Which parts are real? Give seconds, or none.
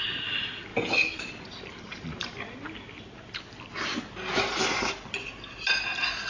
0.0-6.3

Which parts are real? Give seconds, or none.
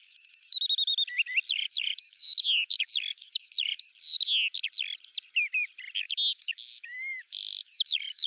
0.9-1.5; 3.9-6.0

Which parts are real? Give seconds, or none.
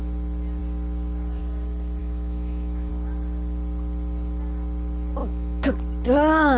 0.0-2.0; 2.9-5.2; 5.7-6.6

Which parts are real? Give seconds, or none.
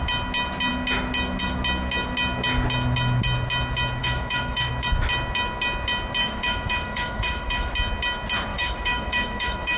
0.0-4.0; 4.7-6.2; 7.7-8.5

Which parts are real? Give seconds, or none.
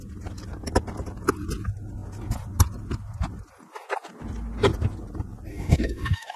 0.0-5.5